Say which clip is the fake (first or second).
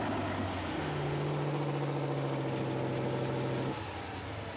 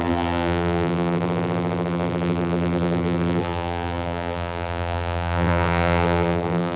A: second